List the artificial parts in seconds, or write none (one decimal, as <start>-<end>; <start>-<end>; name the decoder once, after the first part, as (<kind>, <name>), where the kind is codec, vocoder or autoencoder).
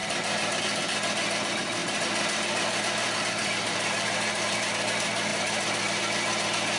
0.0-0.6 (vocoder, BigVGAN v2); 1.8-4.7; 5.3-6.0